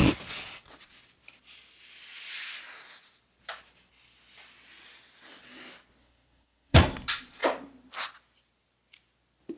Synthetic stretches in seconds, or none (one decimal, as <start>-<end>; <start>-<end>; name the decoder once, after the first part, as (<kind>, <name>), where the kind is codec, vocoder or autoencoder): 6.0-6.8 (codec, SNAC)